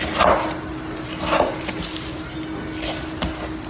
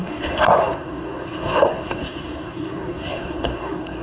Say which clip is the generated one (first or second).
second